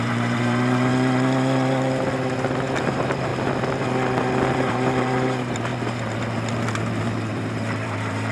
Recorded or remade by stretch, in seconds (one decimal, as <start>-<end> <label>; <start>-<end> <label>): 0.0-0.9 remade; 0.9-2.8 recorded; 2.8-3.3 remade; 3.3-4.5 recorded; 4.5-5.7 remade; 5.7-7.0 recorded; 7.0-8.3 remade